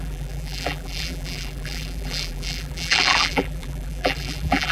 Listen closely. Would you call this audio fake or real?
fake